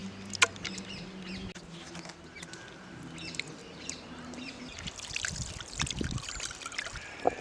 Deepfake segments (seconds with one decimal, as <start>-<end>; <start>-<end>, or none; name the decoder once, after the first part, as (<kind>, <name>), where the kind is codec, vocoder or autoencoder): 3.6-4.5 (vocoder, BigVGAN v2)